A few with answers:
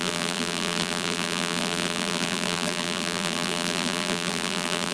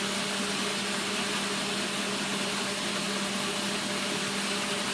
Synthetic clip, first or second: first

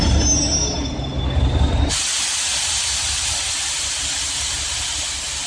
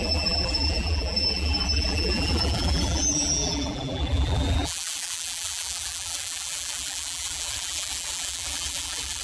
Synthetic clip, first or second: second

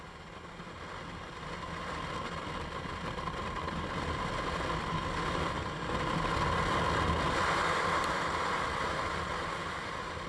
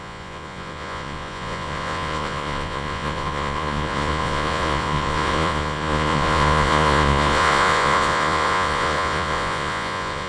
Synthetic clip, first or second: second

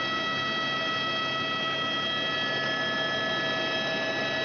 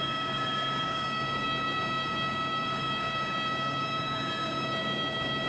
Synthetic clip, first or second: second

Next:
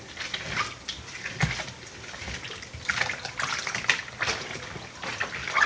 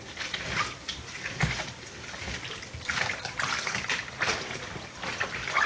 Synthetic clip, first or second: second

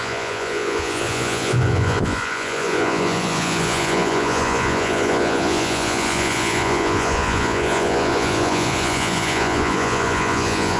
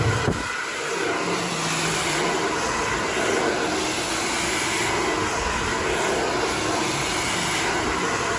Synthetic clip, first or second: first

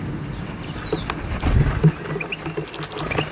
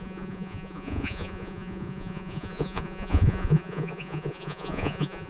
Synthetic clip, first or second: second